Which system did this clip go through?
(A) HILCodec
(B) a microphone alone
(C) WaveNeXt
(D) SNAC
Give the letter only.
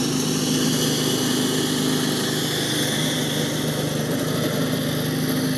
B